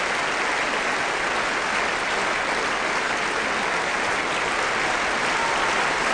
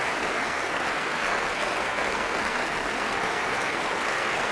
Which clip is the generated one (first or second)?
second